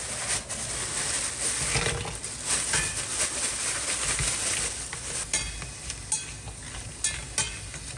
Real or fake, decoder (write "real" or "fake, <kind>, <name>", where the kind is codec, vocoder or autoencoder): real